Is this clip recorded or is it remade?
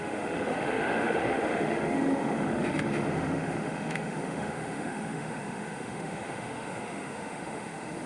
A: remade